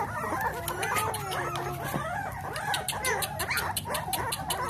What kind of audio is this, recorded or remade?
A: recorded